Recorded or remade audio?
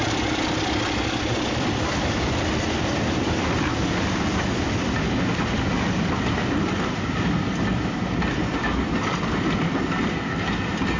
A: recorded